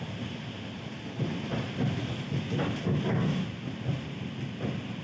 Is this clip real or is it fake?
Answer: real